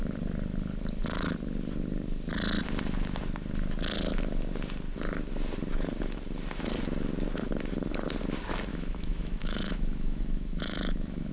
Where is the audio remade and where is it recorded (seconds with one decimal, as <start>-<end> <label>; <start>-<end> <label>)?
0.0-8.7 recorded; 8.7-11.3 remade